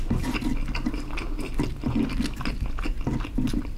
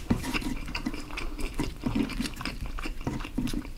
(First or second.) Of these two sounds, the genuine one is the first